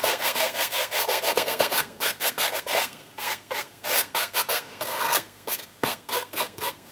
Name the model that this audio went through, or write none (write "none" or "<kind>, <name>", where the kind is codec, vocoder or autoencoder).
codec, SNAC